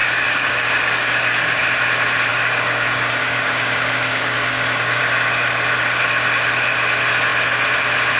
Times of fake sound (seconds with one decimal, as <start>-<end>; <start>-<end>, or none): 0.0-1.6; 2.3-5.0